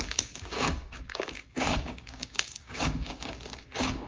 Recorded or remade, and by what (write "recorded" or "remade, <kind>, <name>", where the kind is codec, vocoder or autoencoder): remade, codec, DAC